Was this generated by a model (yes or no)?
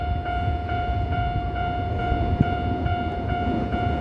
yes